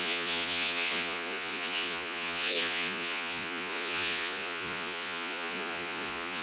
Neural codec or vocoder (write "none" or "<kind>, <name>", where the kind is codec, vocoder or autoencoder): vocoder, Vocos